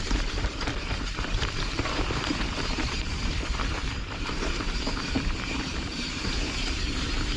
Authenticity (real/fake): fake